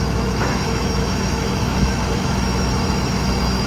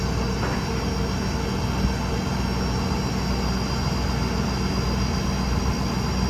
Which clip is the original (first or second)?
second